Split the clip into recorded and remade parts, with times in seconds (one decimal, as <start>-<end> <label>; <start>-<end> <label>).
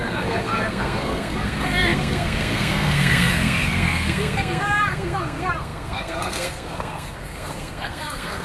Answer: 0.0-8.4 remade